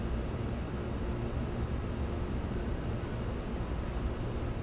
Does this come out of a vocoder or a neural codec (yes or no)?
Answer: no